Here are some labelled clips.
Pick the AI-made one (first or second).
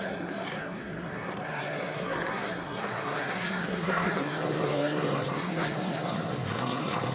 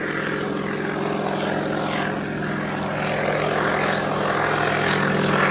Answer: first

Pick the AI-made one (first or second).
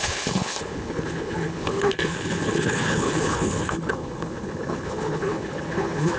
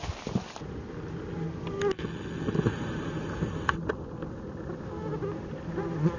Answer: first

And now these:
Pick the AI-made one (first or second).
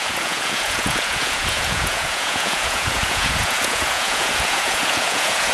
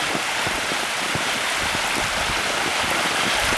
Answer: first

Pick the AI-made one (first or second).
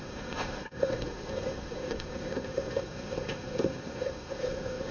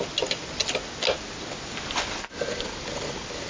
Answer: first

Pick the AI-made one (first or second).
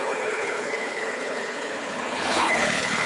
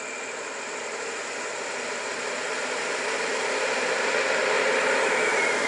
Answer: first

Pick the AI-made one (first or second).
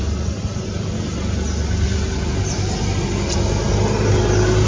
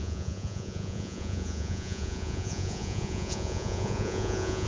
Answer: second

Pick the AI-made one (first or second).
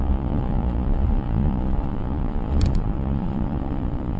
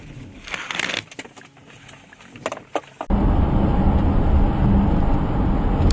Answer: first